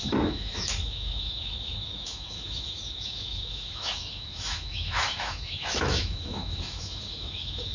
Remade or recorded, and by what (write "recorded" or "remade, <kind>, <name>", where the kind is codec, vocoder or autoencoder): remade, autoencoder, DAC-VAE